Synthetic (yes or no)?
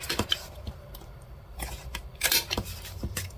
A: yes